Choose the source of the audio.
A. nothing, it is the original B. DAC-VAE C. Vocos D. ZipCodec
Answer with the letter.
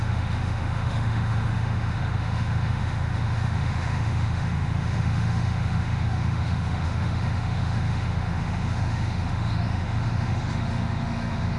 B